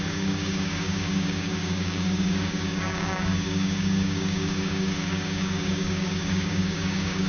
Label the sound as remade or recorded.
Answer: remade